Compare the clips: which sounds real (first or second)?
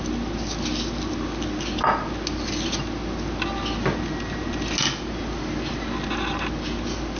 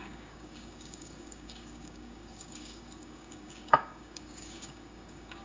first